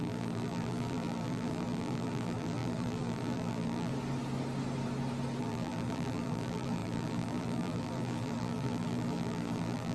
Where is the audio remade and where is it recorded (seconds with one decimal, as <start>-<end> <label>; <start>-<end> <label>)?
0.0-3.9 remade; 3.9-5.4 recorded; 5.4-9.9 remade